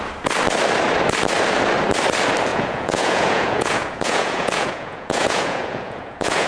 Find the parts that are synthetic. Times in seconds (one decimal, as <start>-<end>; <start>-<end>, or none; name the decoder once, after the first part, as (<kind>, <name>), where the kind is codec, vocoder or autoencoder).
2.5-6.5 (vocoder, Vocos)